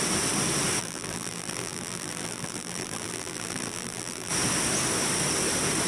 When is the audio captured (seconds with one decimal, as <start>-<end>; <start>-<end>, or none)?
0.0-0.8; 4.3-5.9